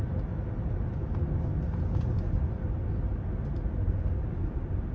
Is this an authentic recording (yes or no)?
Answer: yes